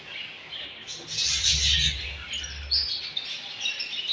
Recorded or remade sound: recorded